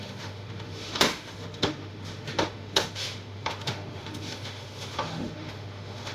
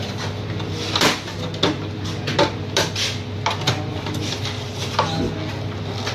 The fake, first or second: first